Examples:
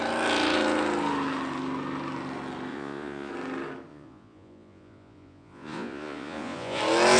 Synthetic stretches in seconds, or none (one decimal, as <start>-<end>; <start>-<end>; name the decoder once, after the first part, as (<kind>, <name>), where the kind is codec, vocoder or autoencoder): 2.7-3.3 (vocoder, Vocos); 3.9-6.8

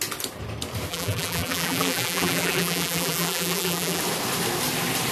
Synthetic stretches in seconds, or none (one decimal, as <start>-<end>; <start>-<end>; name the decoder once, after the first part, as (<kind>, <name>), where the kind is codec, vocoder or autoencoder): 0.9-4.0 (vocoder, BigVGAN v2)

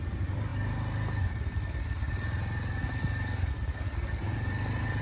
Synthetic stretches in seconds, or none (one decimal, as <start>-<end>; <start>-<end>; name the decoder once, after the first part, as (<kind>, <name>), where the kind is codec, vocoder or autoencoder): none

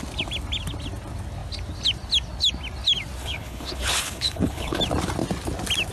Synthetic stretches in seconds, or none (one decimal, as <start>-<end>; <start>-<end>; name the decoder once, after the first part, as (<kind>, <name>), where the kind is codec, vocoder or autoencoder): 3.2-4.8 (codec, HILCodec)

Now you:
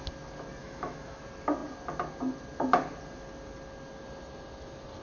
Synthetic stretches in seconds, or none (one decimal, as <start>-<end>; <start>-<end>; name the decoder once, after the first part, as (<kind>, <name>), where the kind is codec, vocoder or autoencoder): 0.6-1.2 (autoencoder, DAC-VAE)

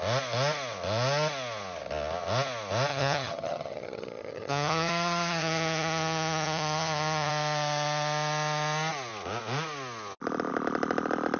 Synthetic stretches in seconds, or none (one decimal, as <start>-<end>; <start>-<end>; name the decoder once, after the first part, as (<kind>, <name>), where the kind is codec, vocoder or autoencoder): 2.9-7.3 (vocoder, HiFi-GAN)